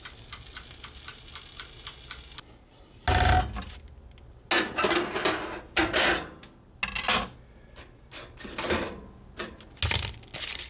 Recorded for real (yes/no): yes